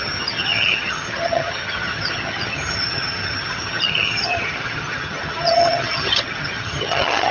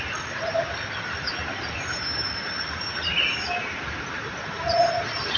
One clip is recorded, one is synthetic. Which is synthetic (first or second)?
first